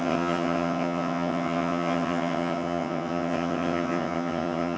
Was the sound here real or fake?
fake